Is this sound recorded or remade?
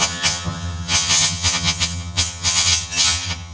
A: remade